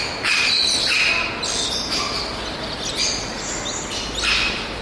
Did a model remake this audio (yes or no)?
no